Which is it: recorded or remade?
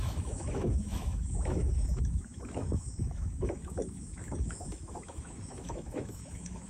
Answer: remade